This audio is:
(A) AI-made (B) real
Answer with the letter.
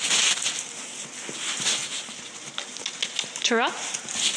B